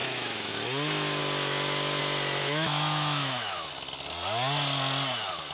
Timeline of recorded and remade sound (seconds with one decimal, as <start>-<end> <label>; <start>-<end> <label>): 0.0-0.5 remade; 0.5-2.4 recorded; 2.4-3.7 remade; 3.7-5.5 recorded